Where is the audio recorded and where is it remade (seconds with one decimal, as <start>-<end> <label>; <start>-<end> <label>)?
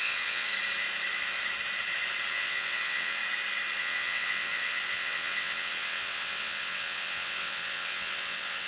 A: 0.0-0.5 remade; 0.5-2.3 recorded; 2.3-3.2 remade; 3.2-3.8 recorded; 3.8-8.7 remade